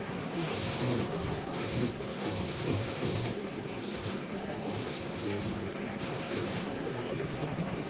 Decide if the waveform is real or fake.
fake